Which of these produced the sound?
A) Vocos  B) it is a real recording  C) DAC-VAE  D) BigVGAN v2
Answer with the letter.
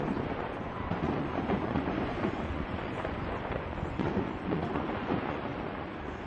A